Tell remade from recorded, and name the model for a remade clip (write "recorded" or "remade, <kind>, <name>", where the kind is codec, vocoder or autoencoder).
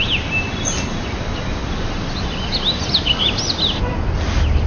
recorded